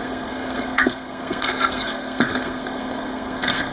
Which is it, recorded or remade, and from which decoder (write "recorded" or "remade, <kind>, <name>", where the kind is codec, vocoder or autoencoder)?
remade, codec, SNAC